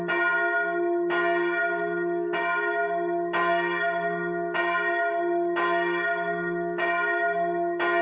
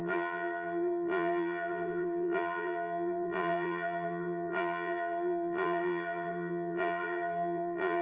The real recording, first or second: first